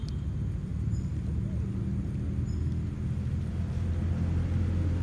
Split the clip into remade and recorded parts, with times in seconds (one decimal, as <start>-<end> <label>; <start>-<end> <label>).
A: 0.0-5.0 recorded